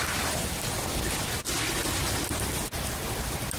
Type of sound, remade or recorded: recorded